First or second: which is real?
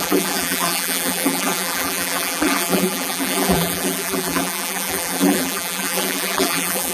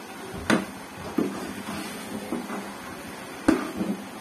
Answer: second